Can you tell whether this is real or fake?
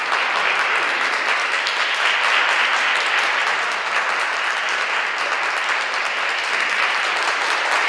real